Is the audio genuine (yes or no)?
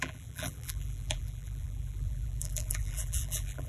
no